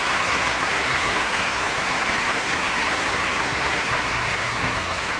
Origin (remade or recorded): remade